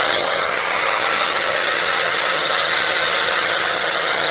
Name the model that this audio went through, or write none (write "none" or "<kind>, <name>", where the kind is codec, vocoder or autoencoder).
vocoder, HiFi-GAN